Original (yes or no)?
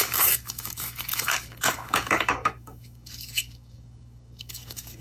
no